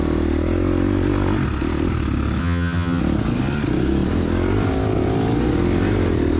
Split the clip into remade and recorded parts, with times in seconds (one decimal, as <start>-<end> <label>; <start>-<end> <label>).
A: 0.0-2.4 recorded; 2.4-3.0 remade; 3.0-6.4 recorded